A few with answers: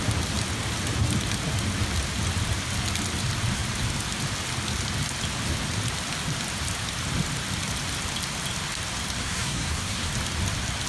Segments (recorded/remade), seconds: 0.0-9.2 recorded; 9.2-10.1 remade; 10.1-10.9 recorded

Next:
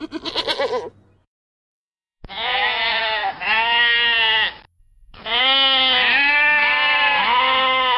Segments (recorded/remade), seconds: 0.0-1.2 recorded; 1.2-3.0 remade; 3.0-4.8 recorded; 4.8-5.4 remade; 5.4-8.0 recorded

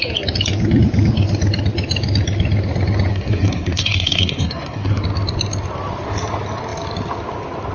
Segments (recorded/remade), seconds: 0.0-3.1 recorded; 3.1-5.0 remade; 5.0-7.7 recorded

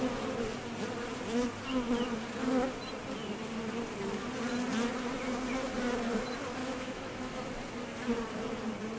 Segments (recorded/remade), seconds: 0.0-6.6 recorded; 6.6-7.3 remade; 7.3-9.0 recorded

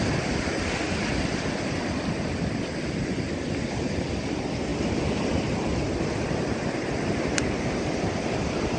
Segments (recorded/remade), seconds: 0.0-8.8 recorded

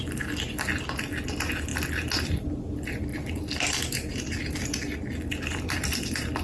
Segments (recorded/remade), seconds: 0.0-6.4 recorded

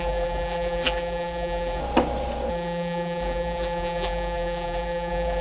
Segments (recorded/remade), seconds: 0.0-1.8 remade; 1.8-2.5 recorded; 2.5-5.4 remade